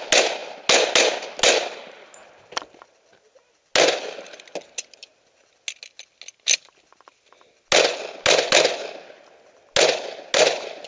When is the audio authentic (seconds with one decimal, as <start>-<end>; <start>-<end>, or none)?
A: 0.0-10.9